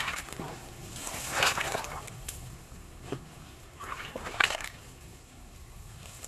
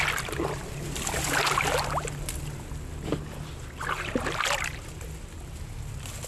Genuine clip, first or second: second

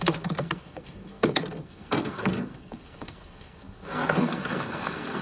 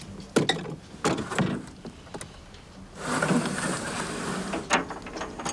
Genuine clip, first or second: second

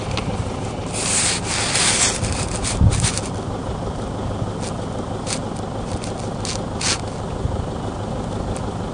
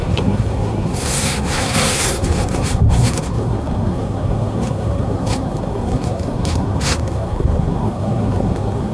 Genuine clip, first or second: first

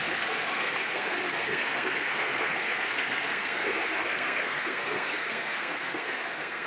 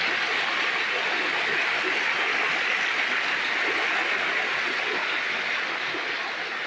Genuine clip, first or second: second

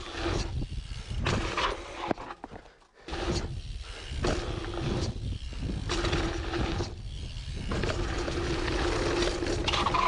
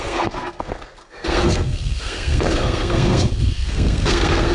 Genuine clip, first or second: first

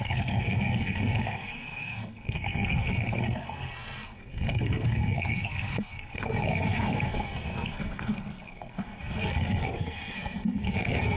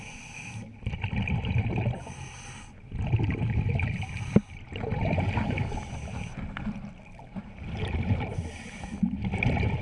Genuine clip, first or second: second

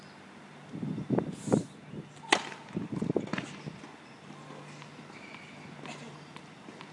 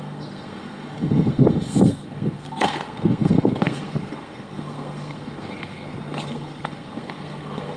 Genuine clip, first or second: first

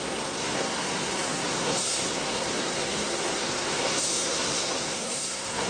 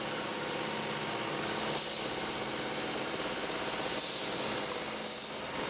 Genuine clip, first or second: second